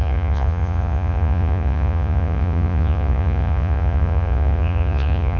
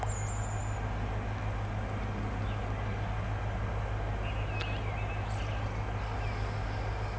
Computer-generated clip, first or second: first